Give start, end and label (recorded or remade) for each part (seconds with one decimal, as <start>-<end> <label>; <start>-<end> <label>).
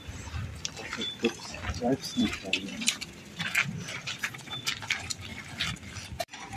0.0-2.7 remade; 2.7-3.7 recorded; 3.7-6.6 remade